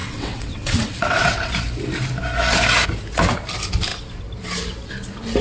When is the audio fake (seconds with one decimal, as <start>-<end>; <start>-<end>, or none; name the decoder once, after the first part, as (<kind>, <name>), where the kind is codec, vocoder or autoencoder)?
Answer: 0.0-1.5 (vocoder, WaveNeXt)